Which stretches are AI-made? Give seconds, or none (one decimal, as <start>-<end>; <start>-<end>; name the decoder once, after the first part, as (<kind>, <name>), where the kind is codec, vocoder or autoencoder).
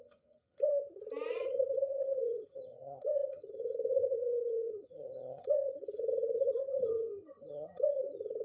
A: 0.0-0.7 (vocoder, HiFi-GAN); 1.3-8.4